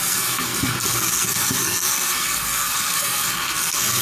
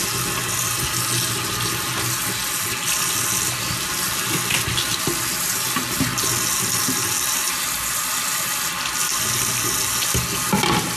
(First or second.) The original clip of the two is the second